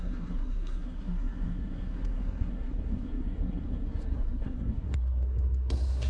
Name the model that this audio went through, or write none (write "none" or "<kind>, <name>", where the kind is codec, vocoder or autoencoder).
codec, SNAC